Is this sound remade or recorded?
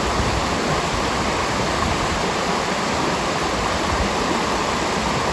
recorded